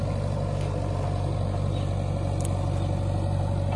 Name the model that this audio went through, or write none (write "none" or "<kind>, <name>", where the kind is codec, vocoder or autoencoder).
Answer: none